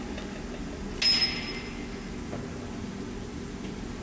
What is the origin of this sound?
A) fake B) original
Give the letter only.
B